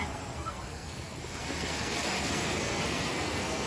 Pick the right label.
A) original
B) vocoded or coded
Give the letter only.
B